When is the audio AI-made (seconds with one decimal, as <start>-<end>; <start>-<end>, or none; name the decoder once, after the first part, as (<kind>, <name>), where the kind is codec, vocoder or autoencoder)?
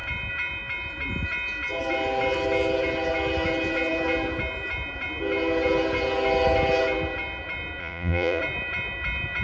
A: 7.8-8.4 (vocoder, Vocos)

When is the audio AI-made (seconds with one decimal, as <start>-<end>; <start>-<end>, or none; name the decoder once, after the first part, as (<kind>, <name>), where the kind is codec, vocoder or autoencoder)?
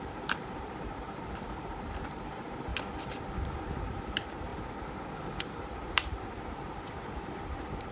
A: 0.0-2.7 (vocoder, BigVGAN v2); 3.8-4.5; 5.4-7.9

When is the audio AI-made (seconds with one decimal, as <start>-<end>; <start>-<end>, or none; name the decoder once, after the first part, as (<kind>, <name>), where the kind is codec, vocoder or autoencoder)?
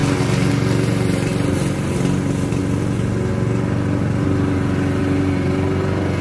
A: none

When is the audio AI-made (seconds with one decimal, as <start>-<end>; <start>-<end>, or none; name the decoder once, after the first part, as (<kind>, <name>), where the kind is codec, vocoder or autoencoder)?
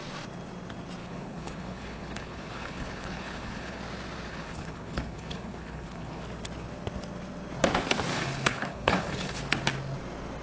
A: 1.0-3.8 (codec, HILCodec); 4.3-6.2; 8.1-9.4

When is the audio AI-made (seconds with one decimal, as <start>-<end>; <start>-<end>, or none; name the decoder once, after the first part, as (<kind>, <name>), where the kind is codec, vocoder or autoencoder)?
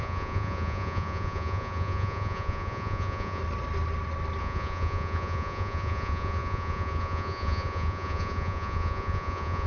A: 0.0-3.4 (vocoder, Vocos); 4.4-9.7